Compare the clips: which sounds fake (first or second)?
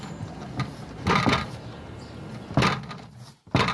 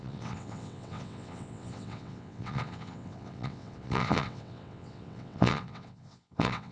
second